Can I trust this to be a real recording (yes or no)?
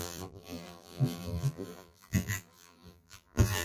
no